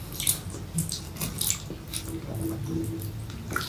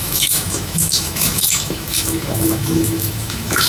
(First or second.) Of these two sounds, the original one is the first